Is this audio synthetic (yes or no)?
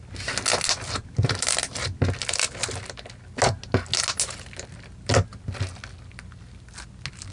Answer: no